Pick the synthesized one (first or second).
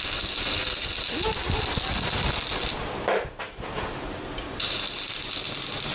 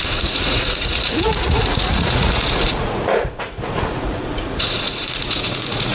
second